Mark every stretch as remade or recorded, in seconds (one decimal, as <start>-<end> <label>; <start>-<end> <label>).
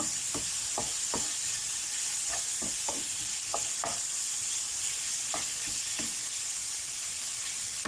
0.0-7.9 recorded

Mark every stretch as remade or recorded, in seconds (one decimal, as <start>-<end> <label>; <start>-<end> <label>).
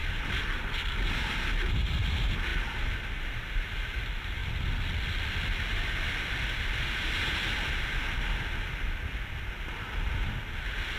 0.0-1.3 remade; 1.3-2.5 recorded; 2.5-3.2 remade; 3.2-11.0 recorded